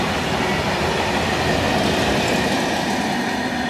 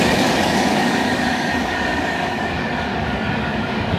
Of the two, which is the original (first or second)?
first